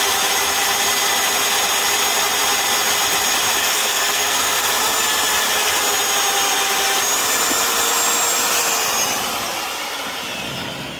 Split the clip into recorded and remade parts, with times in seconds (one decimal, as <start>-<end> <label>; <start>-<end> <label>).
0.0-3.6 recorded; 3.6-4.7 remade; 4.7-11.0 recorded